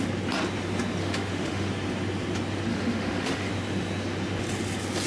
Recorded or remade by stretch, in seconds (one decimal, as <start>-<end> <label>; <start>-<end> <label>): 0.0-1.0 recorded; 1.0-1.7 remade; 1.7-2.7 recorded; 2.7-3.5 remade; 3.5-5.1 recorded